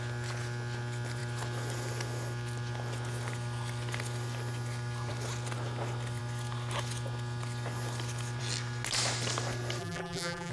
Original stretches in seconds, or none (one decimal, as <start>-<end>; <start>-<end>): 0.0-9.8